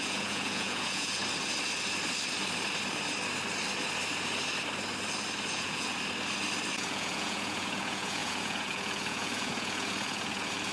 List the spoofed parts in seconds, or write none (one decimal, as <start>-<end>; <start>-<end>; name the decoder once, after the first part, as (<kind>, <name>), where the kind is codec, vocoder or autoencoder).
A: 0.0-1.2 (vocoder, Vocos); 5.5-5.9; 6.7-10.7